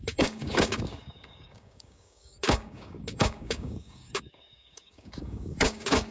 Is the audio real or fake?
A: fake